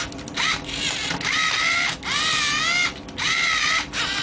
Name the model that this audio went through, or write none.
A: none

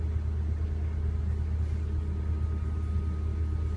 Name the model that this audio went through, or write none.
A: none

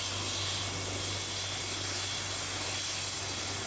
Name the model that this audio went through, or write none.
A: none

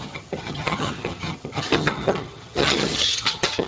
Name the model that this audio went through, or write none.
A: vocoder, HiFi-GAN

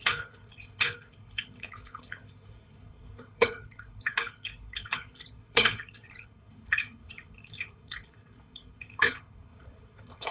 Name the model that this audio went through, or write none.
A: codec, HILCodec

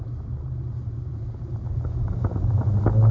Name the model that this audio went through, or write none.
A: none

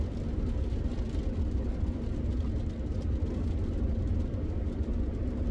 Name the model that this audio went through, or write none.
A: none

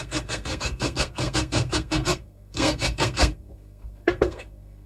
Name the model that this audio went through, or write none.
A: codec, SNAC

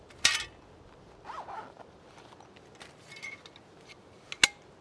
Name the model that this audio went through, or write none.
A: none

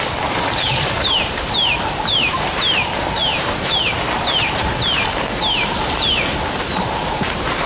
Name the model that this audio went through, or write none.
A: vocoder, BigVGAN v2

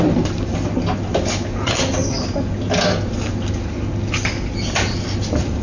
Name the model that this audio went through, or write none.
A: none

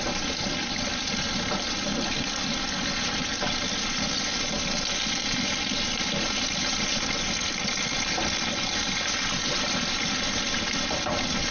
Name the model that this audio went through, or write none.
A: none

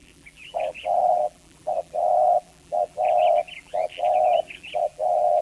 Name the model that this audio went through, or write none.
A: vocoder, BigVGAN v2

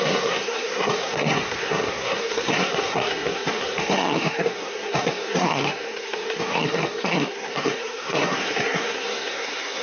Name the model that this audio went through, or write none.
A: codec, SNAC